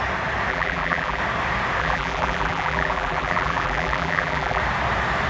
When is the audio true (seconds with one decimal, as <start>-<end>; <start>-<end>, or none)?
0.0-0.5; 1.2-1.8; 4.6-5.3